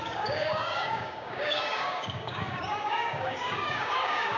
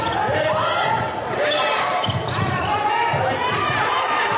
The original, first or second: second